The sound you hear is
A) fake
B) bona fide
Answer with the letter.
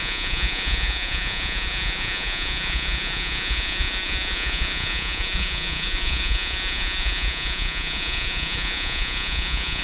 A